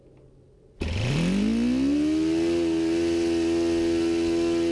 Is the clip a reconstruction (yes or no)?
no